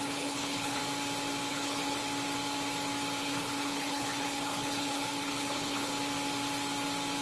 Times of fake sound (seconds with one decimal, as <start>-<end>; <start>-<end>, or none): 0.0-0.8; 1.5-2.0; 3.2-5.9